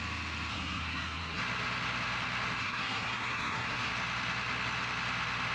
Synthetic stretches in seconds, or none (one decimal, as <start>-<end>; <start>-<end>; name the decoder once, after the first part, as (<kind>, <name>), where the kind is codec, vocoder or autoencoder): 0.5-1.4 (codec, SNAC); 2.6-3.9